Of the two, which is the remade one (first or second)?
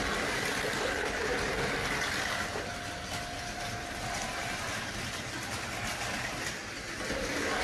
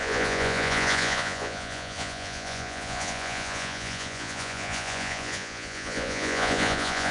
second